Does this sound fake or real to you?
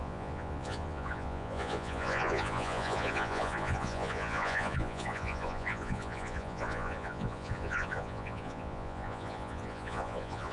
fake